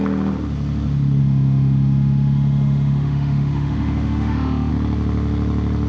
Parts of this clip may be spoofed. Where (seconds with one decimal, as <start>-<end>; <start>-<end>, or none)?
1.2-4.7